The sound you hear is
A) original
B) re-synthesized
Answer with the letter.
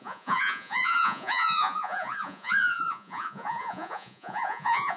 B